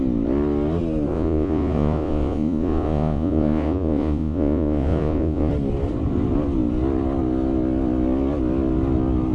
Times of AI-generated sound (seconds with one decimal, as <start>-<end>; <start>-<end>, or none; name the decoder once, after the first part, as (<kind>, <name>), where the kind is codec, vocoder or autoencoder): 1.1-5.5 (vocoder, Vocos)